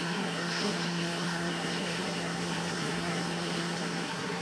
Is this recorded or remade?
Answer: remade